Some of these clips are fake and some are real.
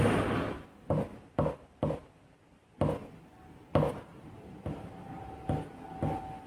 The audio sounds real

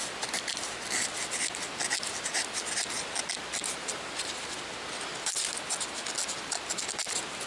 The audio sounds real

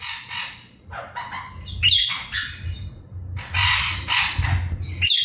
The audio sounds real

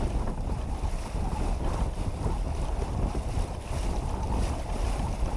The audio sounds fake